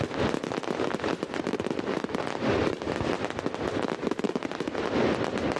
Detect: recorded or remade recorded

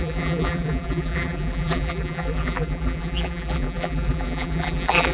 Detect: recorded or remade remade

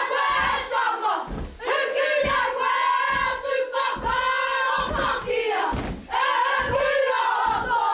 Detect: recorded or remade recorded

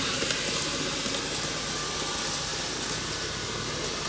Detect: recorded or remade recorded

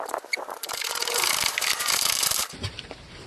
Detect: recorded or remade remade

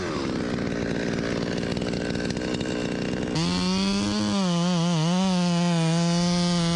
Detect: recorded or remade recorded